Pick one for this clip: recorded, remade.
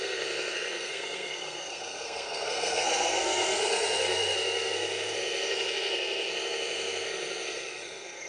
remade